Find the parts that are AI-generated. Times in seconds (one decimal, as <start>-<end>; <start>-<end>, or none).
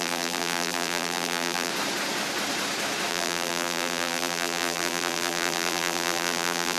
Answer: 0.0-1.7; 3.1-6.8